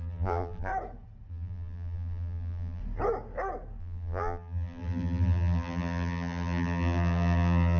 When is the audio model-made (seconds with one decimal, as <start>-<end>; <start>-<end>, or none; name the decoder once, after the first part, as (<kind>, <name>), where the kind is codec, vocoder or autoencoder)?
0.0-0.7 (vocoder, BigVGAN v2); 1.3-2.8; 3.8-7.8